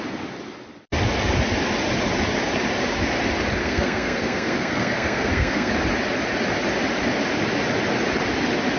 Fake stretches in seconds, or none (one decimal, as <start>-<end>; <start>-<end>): 3.6-5.7